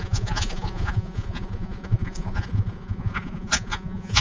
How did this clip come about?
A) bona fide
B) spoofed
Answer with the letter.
B